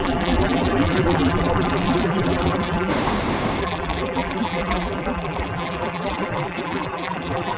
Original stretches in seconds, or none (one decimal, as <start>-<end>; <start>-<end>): 2.9-3.6